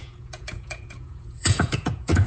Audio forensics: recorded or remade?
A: remade